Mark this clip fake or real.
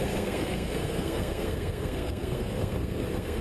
fake